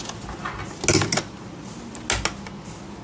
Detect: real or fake real